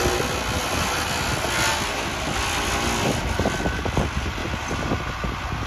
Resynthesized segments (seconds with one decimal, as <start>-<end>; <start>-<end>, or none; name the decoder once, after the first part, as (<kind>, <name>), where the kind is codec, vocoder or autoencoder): none